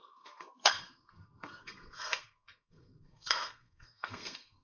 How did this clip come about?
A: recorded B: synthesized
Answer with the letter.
B